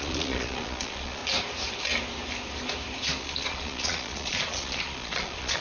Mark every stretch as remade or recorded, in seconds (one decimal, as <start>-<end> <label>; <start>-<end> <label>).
0.0-1.2 remade; 1.2-3.2 recorded; 3.2-5.6 remade